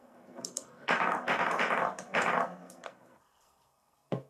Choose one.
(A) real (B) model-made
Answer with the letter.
B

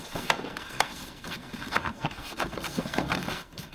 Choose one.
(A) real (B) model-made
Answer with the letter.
B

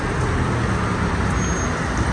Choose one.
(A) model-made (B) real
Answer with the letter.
B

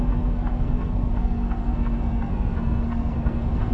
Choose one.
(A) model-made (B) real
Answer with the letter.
A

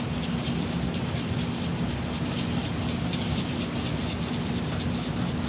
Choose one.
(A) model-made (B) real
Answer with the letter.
B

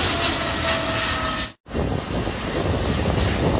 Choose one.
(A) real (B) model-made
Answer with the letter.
A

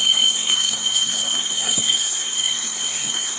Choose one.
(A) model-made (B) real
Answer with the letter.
A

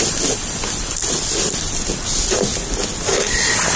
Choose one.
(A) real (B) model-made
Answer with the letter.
A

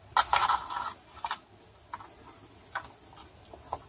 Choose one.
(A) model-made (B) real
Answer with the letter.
B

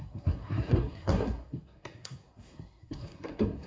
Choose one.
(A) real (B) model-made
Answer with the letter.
B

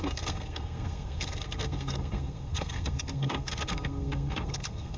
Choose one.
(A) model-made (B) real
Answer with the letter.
A